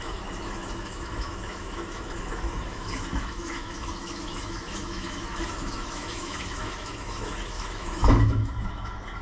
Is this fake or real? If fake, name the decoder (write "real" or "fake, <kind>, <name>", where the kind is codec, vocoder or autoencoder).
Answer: fake, autoencoder, DAC-VAE